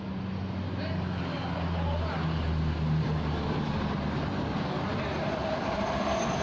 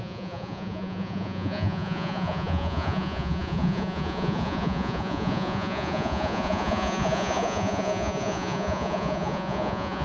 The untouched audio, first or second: first